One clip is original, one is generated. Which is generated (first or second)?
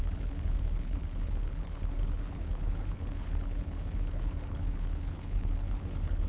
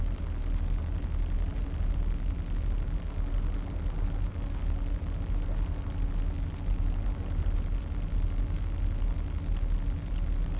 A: first